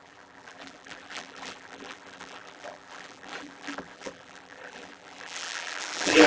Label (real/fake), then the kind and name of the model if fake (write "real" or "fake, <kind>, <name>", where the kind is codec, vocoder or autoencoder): fake, vocoder, BigVGAN v2